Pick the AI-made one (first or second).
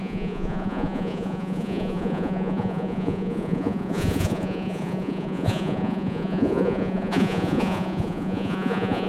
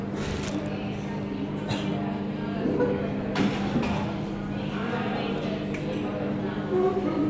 first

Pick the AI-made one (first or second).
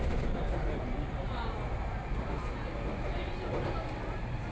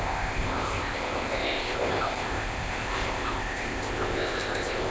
second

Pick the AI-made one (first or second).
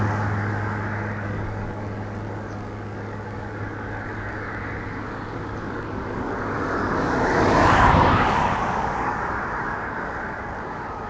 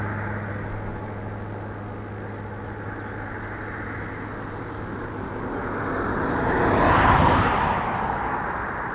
first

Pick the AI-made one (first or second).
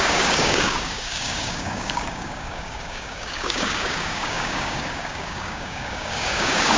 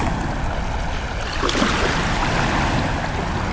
first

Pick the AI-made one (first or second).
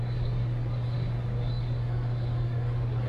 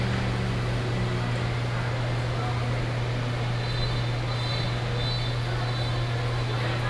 first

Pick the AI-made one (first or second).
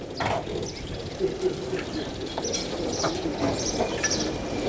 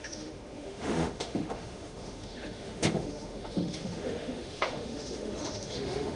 second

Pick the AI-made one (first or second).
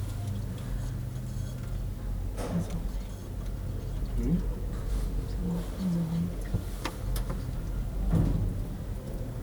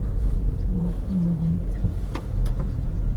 second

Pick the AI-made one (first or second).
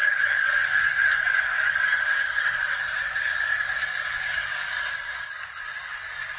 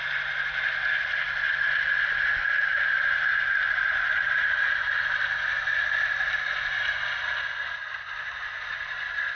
first